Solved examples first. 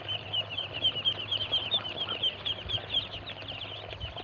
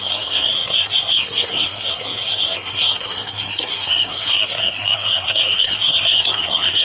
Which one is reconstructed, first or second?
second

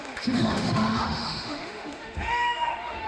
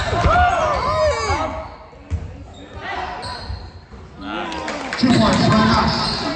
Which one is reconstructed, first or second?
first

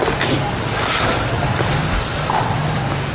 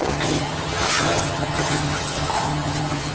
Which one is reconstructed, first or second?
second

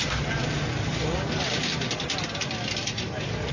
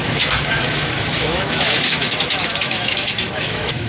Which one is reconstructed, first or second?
second